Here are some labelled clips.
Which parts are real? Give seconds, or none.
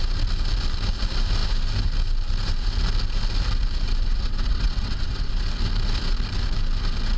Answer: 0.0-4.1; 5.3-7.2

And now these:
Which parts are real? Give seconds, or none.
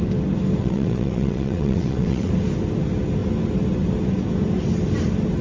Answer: 0.0-0.6; 2.3-5.4